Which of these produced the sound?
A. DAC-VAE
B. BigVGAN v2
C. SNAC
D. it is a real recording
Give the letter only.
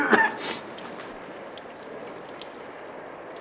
D